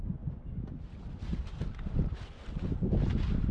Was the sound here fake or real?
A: real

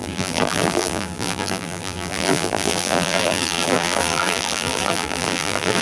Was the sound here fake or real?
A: fake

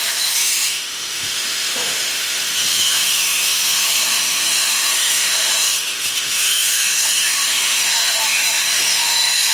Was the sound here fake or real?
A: fake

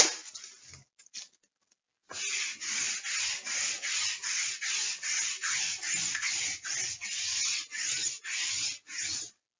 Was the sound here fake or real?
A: real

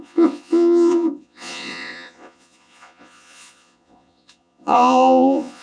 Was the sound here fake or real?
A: fake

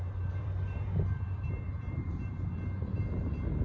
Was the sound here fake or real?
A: fake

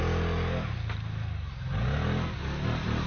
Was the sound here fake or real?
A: real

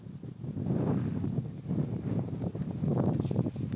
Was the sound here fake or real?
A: real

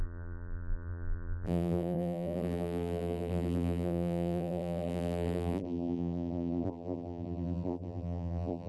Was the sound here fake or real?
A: fake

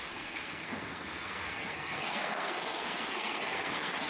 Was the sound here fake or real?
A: fake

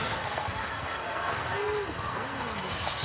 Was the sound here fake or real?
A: fake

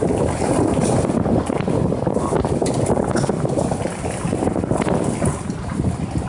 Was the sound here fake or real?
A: real